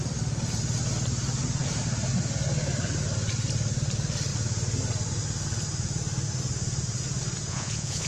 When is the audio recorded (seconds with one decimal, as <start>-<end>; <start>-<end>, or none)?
0.0-7.5